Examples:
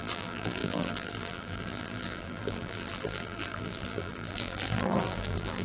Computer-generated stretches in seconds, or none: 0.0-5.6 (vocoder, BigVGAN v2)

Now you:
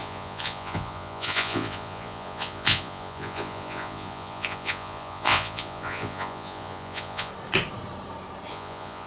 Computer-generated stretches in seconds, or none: 0.0-7.3 (vocoder, Vocos); 8.5-9.1